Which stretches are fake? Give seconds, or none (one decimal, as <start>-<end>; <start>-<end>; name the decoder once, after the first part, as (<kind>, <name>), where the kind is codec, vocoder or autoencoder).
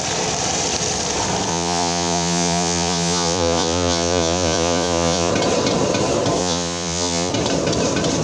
1.5-5.3 (vocoder, Vocos); 6.4-7.3